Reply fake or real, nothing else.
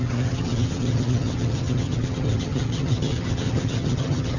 fake